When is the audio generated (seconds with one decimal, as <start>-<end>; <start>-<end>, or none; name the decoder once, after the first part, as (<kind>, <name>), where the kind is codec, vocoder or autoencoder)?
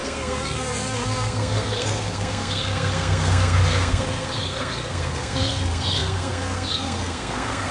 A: 0.0-7.7 (codec, SNAC)